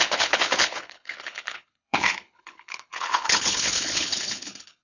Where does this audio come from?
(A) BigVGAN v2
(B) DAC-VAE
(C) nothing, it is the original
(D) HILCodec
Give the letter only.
D